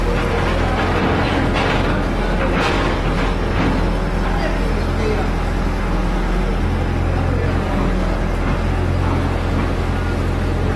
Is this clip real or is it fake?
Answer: real